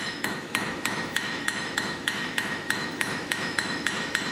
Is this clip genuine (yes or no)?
no